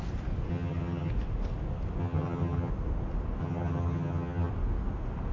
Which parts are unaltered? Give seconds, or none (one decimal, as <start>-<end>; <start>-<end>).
0.0-0.5; 1.1-2.0; 2.7-3.4; 4.5-5.3